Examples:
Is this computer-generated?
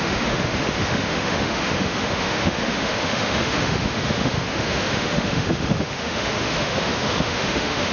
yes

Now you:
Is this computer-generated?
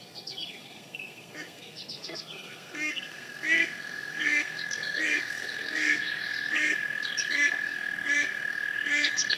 yes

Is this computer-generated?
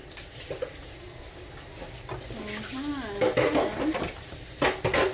no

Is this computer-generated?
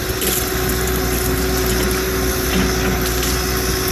no